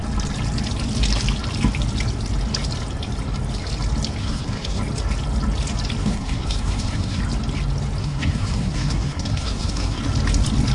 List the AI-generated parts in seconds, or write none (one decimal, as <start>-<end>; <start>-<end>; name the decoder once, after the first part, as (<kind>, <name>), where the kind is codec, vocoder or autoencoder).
4.2-4.8 (codec, SNAC); 6.0-7.2; 8.0-10.0